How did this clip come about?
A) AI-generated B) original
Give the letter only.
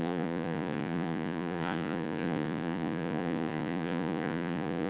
A